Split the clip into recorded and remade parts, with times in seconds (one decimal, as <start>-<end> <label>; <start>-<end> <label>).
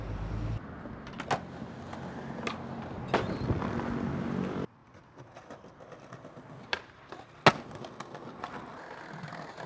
0.0-9.7 recorded